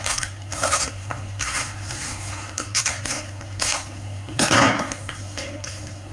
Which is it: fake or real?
fake